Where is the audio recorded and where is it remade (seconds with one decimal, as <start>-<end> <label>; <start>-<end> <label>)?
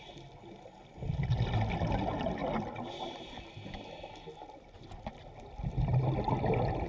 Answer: 0.0-6.9 recorded